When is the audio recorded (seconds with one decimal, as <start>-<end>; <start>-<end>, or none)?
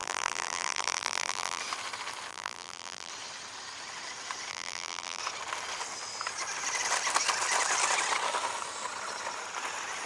1.6-2.3; 3.1-4.5; 5.2-10.1